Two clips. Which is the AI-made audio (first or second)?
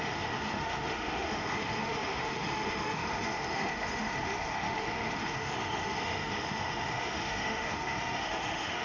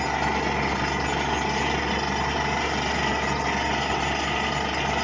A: first